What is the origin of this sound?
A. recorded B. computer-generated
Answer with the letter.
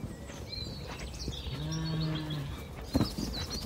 A